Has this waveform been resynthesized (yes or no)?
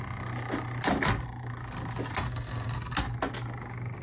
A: no